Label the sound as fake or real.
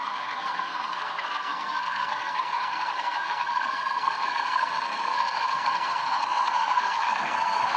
fake